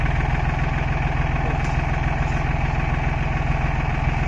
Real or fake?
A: real